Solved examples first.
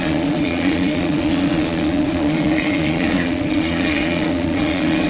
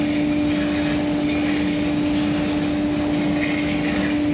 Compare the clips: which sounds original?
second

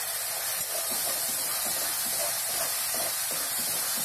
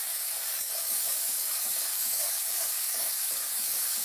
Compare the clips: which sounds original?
first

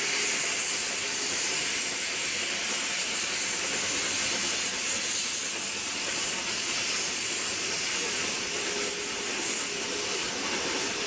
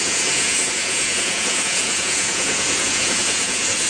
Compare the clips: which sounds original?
first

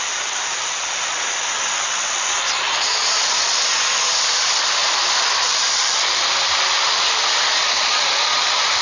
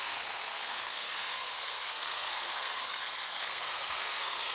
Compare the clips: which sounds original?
first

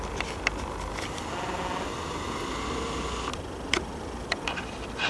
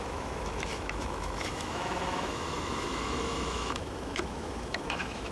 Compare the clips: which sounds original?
first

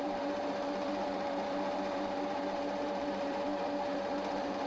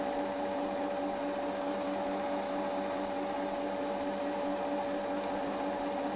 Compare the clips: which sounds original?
second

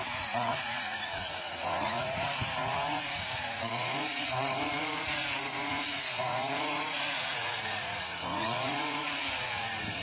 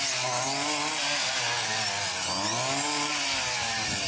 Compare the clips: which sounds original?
second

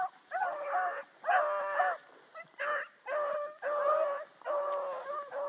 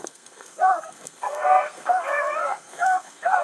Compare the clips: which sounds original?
first